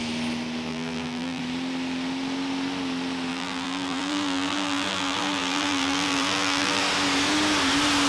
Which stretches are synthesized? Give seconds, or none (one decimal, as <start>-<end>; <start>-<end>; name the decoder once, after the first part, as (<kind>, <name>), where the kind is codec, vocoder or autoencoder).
0.7-1.4 (vocoder, BigVGAN v2); 3.3-6.8

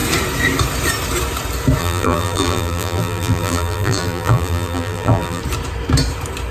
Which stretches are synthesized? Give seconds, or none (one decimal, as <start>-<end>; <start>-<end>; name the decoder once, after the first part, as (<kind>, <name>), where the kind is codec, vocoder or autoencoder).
1.8-5.4 (vocoder, BigVGAN v2)

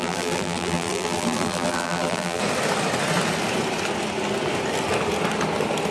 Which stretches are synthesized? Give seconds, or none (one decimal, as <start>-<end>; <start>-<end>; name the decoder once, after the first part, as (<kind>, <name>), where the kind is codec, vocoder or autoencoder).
0.0-2.4 (vocoder, BigVGAN v2)